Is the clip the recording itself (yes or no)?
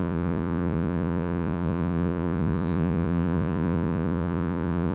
no